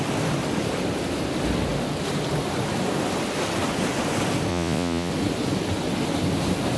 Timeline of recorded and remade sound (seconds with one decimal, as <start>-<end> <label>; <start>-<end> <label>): 0.0-4.5 recorded; 4.5-5.1 remade; 5.1-6.8 recorded

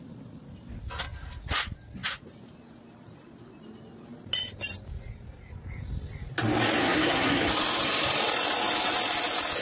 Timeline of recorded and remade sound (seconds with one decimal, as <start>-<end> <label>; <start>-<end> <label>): 0.0-6.8 recorded; 6.8-7.4 remade; 7.4-9.6 recorded